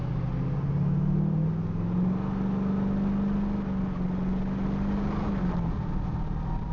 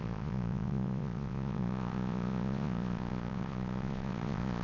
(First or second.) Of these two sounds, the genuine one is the first